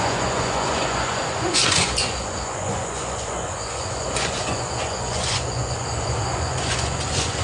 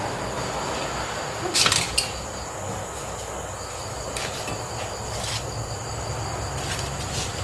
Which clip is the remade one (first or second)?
first